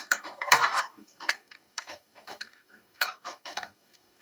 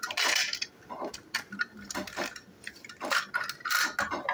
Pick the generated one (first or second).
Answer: first